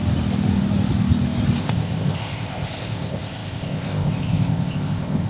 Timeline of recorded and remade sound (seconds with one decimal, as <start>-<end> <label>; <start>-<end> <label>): 0.0-1.6 recorded; 1.6-5.3 remade